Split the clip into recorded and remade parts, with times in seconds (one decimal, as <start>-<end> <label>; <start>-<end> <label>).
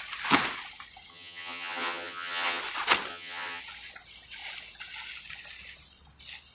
0.0-1.1 recorded; 1.1-2.6 remade; 2.6-3.1 recorded; 3.1-3.6 remade; 3.6-6.5 recorded